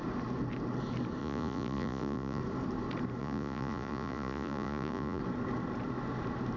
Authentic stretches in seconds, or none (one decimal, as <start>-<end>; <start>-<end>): 0.0-1.2; 2.4-3.2; 5.2-6.6